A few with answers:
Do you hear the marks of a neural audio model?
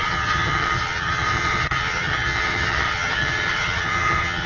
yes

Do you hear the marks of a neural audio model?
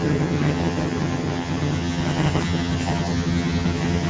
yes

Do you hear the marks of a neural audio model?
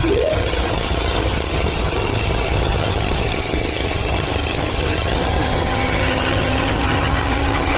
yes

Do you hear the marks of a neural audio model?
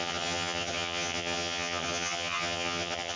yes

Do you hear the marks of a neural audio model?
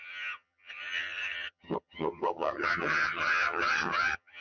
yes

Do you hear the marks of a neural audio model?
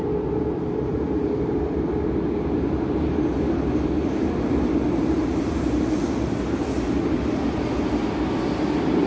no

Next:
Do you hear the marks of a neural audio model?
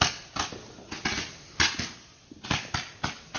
no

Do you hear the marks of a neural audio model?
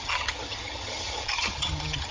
yes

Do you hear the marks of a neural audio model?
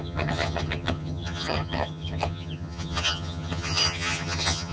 yes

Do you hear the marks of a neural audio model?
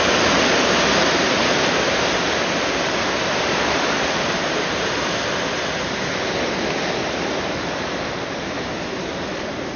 no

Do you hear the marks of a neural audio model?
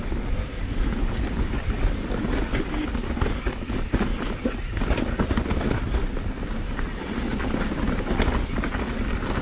no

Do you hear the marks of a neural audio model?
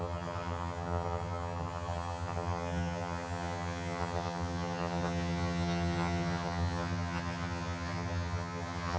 yes